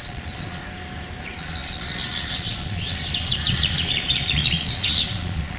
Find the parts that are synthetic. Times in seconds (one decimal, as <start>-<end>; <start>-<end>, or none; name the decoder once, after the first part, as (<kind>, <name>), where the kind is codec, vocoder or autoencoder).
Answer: 0.0-0.6 (vocoder, Vocos); 1.2-5.6